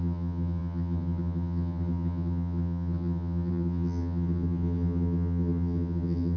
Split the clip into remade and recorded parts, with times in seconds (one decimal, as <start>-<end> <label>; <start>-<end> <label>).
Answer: 0.0-6.4 remade